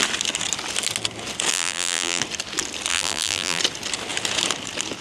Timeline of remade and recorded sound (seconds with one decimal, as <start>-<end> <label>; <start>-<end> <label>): 0.0-1.5 recorded; 1.5-2.2 remade; 2.2-2.9 recorded; 2.9-3.6 remade; 3.6-5.0 recorded